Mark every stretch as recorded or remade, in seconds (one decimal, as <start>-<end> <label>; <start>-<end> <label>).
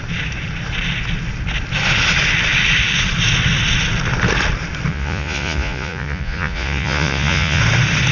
0.0-4.9 recorded; 4.9-7.6 remade; 7.6-8.1 recorded